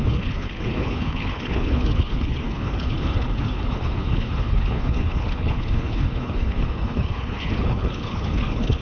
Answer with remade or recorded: remade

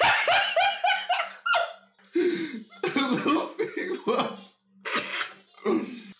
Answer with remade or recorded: recorded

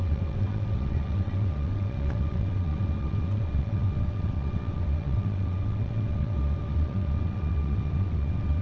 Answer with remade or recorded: remade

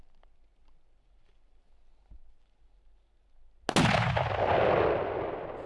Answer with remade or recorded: recorded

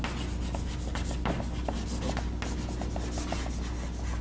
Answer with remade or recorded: recorded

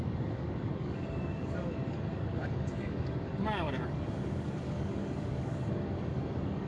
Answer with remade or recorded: remade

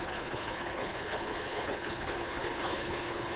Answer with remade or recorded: remade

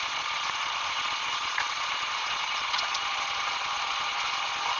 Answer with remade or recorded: remade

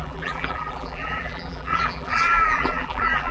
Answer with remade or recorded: remade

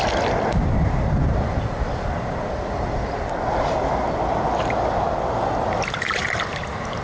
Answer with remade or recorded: recorded